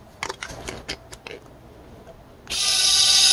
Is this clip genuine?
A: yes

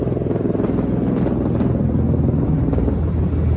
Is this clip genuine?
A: yes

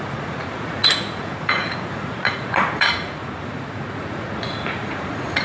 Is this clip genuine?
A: no